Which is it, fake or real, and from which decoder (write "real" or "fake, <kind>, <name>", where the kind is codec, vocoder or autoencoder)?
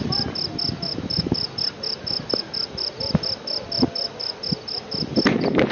real